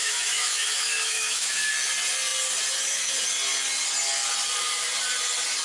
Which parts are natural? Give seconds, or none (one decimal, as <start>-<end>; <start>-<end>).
1.7-5.6